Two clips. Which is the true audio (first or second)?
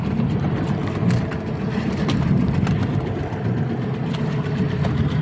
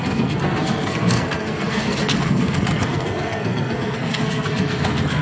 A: first